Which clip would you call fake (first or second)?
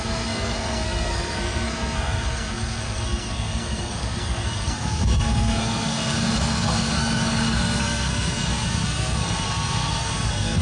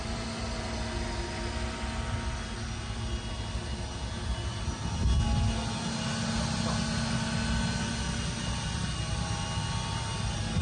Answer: first